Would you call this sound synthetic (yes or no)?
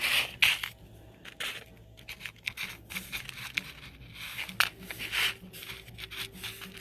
no